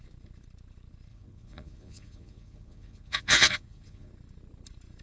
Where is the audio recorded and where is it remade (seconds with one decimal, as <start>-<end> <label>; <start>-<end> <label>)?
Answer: 0.0-1.1 recorded; 1.1-4.1 remade; 4.1-5.0 recorded